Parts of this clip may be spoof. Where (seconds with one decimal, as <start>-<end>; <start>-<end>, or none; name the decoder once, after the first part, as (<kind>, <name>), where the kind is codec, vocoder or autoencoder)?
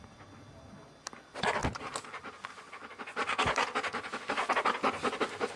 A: none